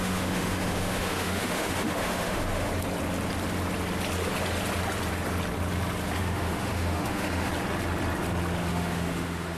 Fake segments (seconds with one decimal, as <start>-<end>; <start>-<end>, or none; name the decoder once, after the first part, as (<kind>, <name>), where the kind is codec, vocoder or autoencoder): 0.0-2.7 (autoencoder, DAC-VAE); 6.2-7.5; 8.7-9.6